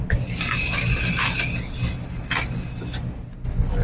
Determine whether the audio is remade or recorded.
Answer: recorded